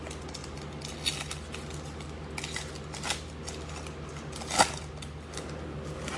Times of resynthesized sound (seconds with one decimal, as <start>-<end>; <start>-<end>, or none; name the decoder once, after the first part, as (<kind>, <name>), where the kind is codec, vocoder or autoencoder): none